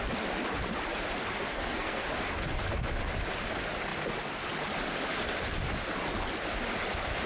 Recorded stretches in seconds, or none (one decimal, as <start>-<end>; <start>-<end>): 0.0-1.5; 2.1-7.3